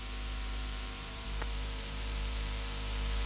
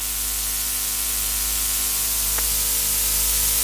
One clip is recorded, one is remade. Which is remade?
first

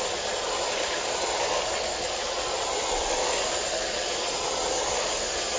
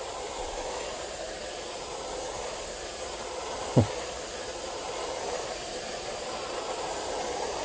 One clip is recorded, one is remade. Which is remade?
second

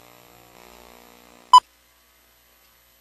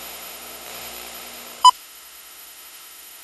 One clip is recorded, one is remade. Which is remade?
second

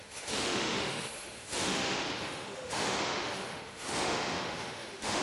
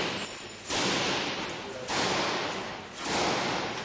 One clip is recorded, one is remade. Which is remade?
first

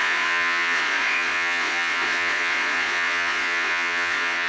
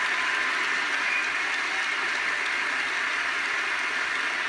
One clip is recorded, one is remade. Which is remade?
first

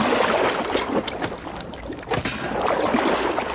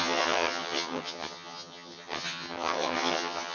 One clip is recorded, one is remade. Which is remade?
second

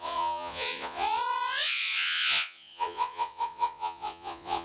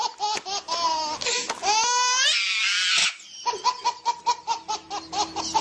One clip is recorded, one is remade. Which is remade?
first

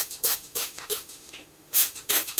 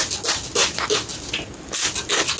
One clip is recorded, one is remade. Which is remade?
first